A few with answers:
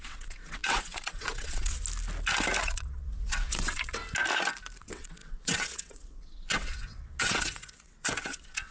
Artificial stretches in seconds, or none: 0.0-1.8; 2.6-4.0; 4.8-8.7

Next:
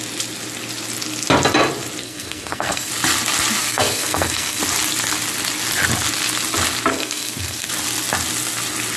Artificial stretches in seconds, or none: 2.0-2.9; 3.6-4.6; 6.9-7.7

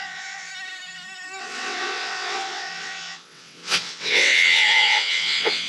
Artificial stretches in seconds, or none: 0.0-0.5; 1.4-5.7

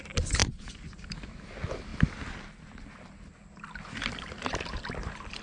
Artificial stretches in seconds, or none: none